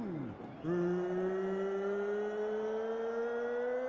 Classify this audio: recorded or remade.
recorded